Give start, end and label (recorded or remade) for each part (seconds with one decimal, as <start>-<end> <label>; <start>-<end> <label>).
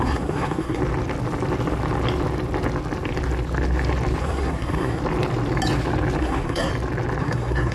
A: 0.0-0.8 remade; 0.8-4.2 recorded; 4.2-5.0 remade; 5.0-6.2 recorded; 6.2-6.7 remade; 6.7-7.2 recorded; 7.2-7.7 remade